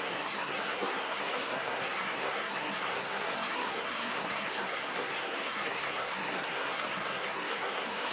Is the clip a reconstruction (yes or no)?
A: yes